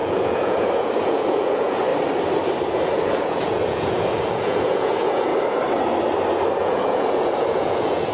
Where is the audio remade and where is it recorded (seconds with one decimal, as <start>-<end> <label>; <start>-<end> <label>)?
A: 0.0-1.9 remade; 1.9-2.6 recorded; 2.6-5.3 remade; 5.3-6.6 recorded; 6.6-8.1 remade